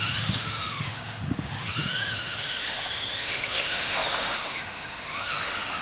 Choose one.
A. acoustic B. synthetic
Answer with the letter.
B